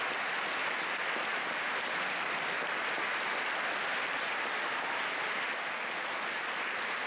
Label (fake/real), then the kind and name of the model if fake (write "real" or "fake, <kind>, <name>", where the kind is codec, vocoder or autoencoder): real